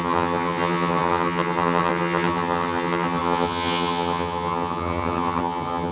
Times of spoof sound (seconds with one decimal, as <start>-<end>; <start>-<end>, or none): 0.0-5.9